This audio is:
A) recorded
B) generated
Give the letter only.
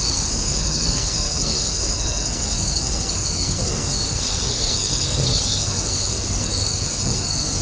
B